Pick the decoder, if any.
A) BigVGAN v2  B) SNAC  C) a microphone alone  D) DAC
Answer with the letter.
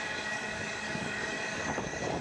D